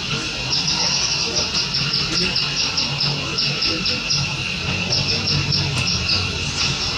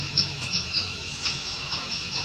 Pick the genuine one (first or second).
first